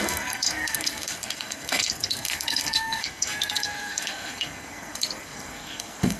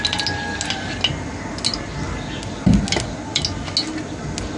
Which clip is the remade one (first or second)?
first